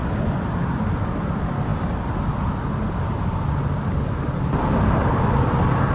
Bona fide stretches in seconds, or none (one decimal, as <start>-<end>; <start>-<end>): 0.0-5.9